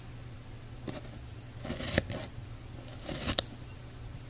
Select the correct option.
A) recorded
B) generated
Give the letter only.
A